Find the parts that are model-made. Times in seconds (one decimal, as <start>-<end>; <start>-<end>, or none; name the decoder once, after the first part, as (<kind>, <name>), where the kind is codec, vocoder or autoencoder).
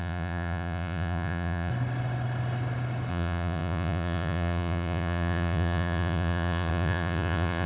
0.0-1.7 (vocoder, Vocos); 3.1-7.7